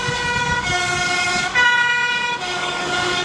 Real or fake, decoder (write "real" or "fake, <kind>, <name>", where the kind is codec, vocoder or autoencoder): fake, codec, DAC